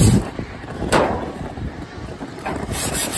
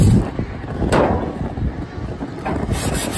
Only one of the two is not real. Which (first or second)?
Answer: first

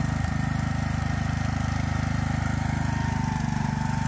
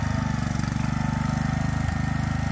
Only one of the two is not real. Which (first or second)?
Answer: first